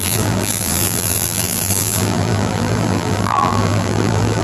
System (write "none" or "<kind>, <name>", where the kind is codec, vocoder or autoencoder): vocoder, BigVGAN v2